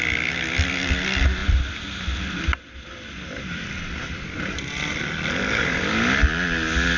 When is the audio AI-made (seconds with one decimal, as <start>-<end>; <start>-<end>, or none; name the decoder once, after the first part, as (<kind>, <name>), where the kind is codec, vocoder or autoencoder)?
none